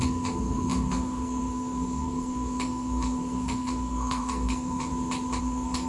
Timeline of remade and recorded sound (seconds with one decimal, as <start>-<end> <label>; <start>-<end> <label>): 0.0-4.9 remade; 4.9-5.4 recorded; 5.4-5.9 remade